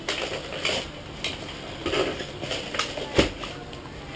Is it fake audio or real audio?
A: real